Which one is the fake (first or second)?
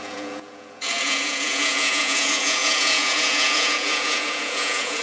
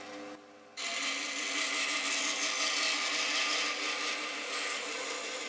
first